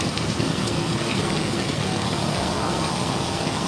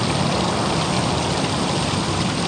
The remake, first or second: first